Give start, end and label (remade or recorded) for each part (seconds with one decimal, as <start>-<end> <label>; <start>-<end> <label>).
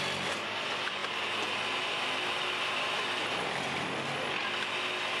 0.0-5.2 recorded